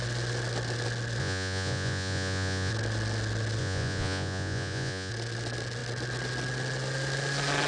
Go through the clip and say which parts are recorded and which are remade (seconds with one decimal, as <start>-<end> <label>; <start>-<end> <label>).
0.0-1.2 recorded; 1.2-2.7 remade; 2.7-3.6 recorded; 3.6-5.1 remade; 5.1-7.7 recorded